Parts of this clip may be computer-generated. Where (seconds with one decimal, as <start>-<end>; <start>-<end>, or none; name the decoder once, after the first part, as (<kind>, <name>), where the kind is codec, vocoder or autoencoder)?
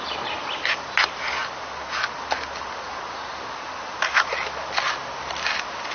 none